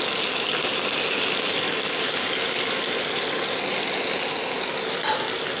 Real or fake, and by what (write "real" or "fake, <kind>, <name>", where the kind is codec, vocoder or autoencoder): real